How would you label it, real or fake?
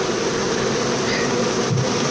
real